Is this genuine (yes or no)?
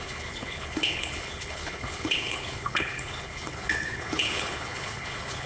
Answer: no